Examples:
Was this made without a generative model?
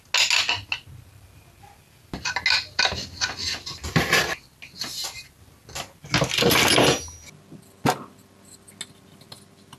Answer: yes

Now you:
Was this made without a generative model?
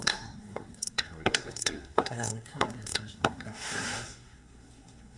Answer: no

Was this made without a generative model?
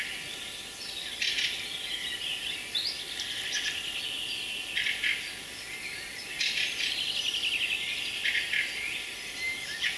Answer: yes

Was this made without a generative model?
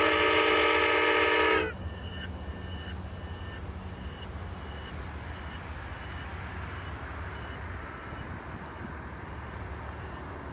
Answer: yes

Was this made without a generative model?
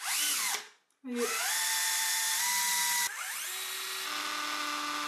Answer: yes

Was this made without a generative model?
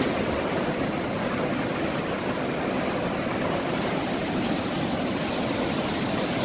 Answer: yes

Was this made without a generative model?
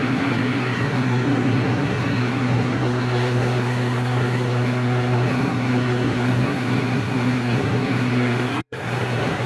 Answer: no